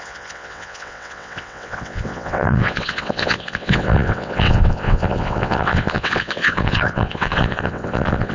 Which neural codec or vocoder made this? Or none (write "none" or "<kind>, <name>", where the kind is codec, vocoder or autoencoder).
vocoder, WaveNeXt